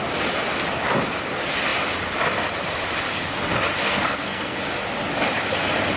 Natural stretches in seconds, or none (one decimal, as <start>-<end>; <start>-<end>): 0.0-3.8; 4.6-6.0